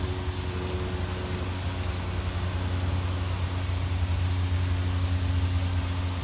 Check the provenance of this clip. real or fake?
real